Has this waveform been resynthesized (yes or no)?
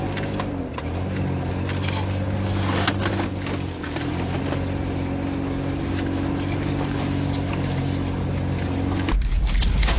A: no